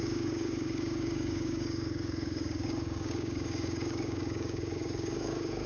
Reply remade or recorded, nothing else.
remade